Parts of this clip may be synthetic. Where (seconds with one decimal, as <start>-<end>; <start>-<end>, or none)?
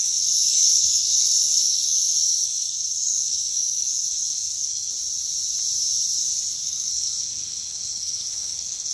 0.0-4.9; 6.6-8.9